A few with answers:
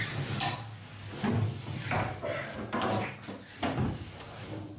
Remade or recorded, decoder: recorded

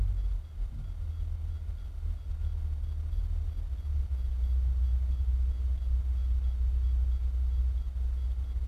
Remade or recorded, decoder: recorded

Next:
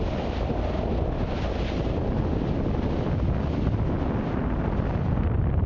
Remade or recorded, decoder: recorded